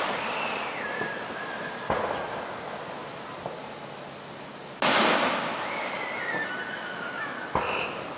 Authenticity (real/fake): real